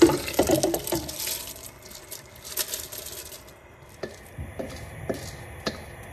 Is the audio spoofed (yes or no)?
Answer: no